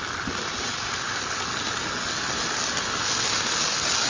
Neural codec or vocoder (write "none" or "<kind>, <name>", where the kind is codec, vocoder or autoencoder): none